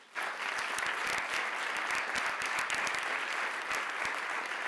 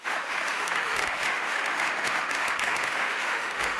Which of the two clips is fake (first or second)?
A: second